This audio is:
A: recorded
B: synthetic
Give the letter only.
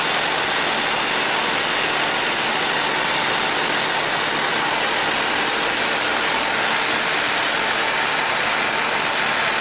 A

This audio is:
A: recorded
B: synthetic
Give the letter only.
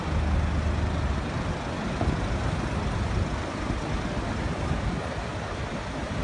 A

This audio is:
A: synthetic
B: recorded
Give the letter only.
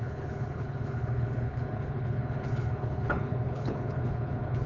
A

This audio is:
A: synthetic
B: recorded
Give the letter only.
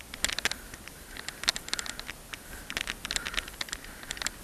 B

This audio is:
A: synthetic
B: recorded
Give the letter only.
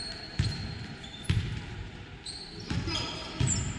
A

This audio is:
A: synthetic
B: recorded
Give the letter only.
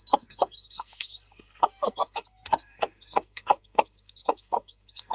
A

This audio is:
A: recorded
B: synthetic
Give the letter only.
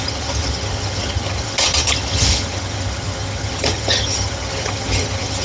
B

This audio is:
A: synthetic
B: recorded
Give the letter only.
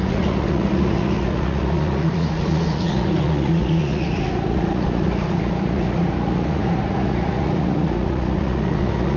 A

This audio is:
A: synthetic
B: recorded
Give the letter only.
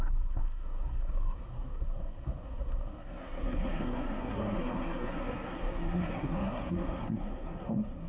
A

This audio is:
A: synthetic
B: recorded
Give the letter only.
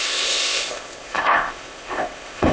A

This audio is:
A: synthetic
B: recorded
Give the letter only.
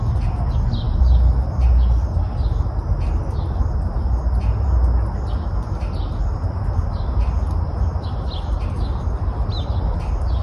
B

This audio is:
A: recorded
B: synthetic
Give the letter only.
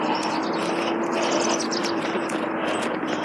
A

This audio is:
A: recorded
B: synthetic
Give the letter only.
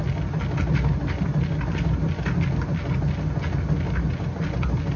A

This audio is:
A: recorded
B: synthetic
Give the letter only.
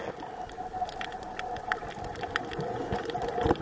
A